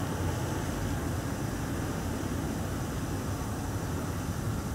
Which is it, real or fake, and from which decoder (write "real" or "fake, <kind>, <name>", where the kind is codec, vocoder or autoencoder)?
real